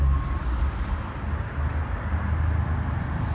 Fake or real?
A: real